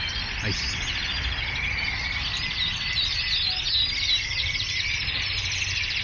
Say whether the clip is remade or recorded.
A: recorded